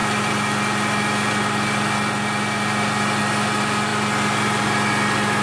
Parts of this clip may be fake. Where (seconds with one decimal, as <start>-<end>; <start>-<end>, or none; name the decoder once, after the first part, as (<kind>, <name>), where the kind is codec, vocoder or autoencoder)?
none